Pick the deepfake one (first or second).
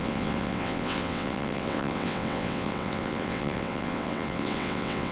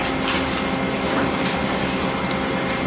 first